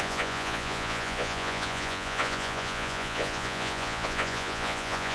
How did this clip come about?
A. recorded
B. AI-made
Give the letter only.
B